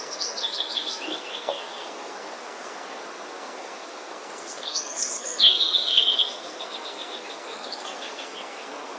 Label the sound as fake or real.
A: fake